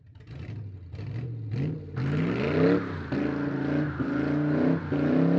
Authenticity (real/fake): real